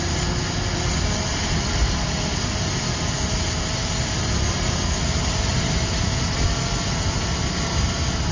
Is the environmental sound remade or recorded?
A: recorded